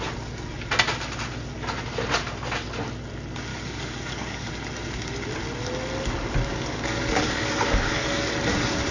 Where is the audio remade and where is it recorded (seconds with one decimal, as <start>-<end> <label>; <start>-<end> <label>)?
0.0-3.5 recorded; 3.5-4.5 remade; 4.5-6.5 recorded; 6.5-8.3 remade; 8.3-8.9 recorded